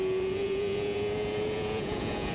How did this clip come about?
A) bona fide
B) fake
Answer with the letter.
B